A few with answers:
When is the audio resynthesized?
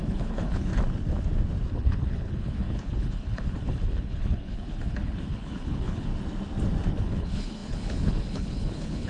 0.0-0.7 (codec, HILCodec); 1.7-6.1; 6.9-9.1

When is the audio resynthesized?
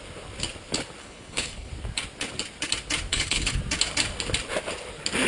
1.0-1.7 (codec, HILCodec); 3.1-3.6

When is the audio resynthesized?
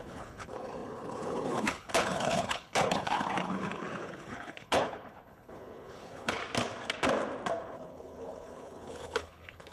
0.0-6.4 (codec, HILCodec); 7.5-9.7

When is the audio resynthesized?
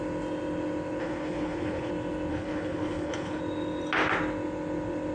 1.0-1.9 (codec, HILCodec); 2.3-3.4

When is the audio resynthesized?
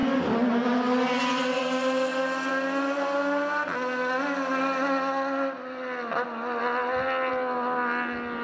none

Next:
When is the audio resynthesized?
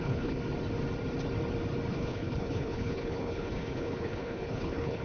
0.0-0.4 (codec, HILCodec); 1.9-5.0